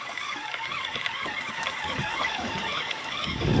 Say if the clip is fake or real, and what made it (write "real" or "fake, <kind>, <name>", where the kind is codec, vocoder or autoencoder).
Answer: fake, codec, DAC